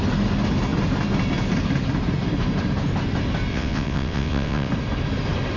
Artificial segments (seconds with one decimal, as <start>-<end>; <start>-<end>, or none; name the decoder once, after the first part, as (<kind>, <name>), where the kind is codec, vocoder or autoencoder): 3.5-4.7 (vocoder, WaveNeXt)